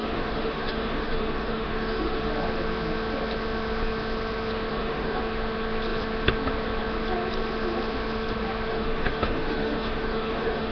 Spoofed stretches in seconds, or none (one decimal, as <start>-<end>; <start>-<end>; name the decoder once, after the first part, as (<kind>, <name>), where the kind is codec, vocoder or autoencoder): 0.0-2.3 (autoencoder, DAC-VAE); 4.7-5.2; 8.7-10.7